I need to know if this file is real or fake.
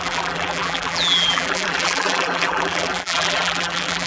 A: fake